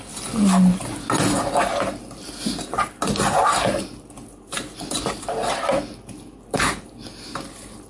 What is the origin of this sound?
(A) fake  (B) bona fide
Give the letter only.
B